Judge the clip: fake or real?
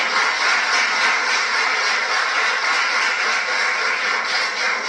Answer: real